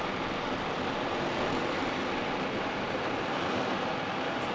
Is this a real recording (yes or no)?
yes